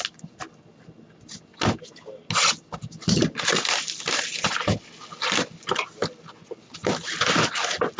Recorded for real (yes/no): yes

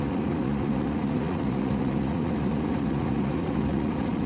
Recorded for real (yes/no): no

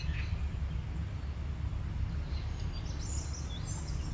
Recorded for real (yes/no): yes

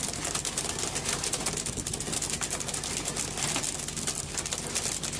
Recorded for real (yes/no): yes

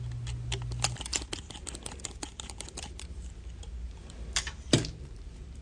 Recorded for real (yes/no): yes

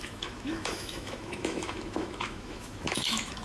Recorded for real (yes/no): no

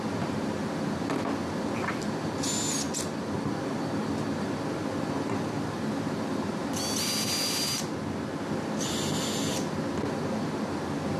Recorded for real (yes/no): yes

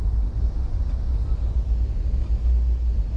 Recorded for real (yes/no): yes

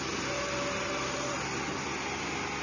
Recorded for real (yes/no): yes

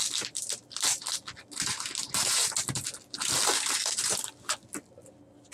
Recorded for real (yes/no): yes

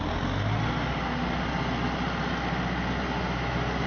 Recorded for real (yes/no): yes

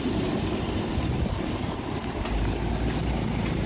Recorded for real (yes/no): yes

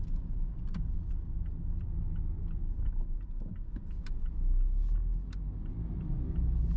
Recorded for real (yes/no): yes